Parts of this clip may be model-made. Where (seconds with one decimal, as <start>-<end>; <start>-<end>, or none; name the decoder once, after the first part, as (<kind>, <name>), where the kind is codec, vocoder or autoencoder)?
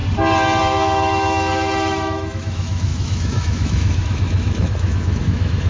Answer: 0.6-5.7 (autoencoder, DAC-VAE)